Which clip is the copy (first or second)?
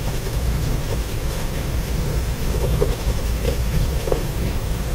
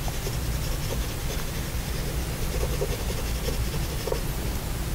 first